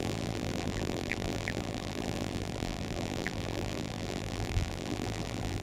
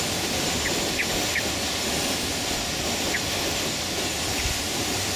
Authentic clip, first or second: second